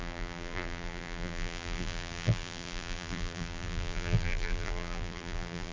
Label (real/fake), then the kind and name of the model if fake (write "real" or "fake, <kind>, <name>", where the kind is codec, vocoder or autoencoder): fake, vocoder, BigVGAN v2